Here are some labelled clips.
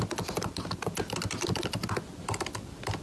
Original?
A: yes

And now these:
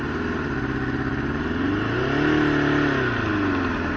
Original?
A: yes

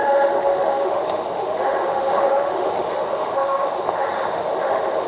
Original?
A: no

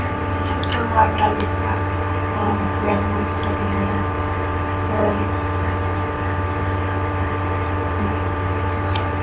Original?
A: no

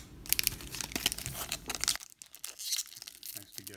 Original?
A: yes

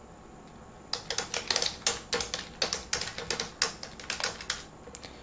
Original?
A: yes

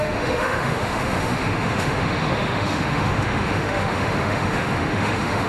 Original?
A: no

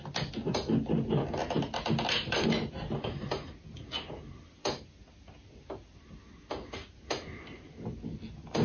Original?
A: yes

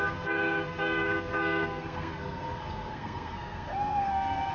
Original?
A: no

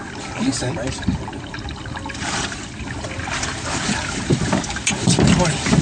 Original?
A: no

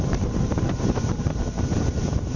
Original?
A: no